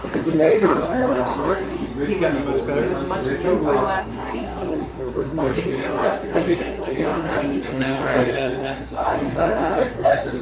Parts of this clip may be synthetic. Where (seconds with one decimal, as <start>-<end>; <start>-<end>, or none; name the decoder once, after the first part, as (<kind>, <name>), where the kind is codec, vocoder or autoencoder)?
0.0-1.9 (codec, SNAC); 4.0-10.4